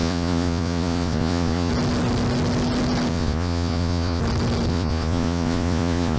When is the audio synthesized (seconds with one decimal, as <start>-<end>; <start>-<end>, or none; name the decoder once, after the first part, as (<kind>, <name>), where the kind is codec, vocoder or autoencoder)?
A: 0.0-1.7 (vocoder, Vocos); 3.1-4.2; 4.7-6.2